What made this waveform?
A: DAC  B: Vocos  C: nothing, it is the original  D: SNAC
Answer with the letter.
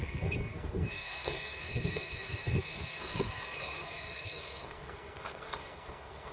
D